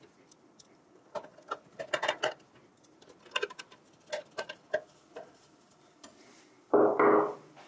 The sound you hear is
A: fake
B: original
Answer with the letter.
B